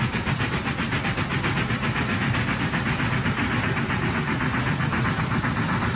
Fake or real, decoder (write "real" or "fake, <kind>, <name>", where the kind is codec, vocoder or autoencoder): real